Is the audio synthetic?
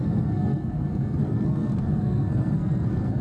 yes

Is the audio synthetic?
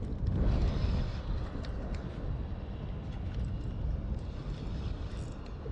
no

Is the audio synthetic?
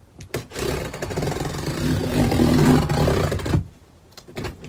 no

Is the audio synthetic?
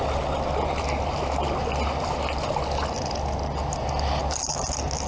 no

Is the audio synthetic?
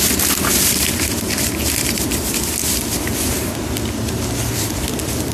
no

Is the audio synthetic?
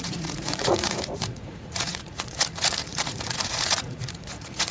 yes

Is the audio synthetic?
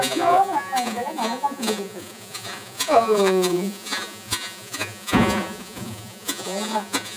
yes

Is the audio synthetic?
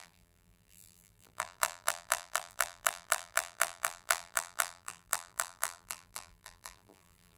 yes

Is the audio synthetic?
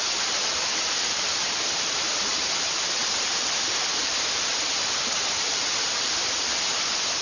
no